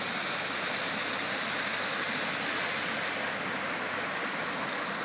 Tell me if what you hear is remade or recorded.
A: recorded